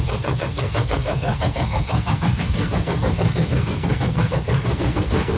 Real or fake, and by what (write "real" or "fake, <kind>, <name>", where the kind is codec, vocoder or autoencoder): fake, codec, SNAC